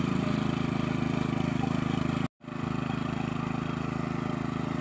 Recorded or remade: recorded